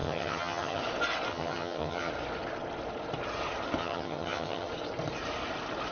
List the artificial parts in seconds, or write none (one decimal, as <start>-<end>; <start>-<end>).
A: 0.0-0.8; 1.3-2.1; 3.8-4.7